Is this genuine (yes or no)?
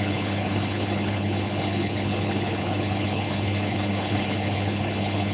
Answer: no